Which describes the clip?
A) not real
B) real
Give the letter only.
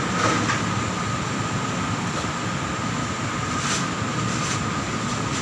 B